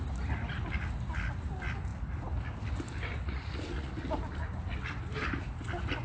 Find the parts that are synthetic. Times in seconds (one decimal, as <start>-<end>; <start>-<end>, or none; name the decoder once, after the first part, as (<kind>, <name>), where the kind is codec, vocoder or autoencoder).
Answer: 3.2-3.9 (vocoder, Vocos)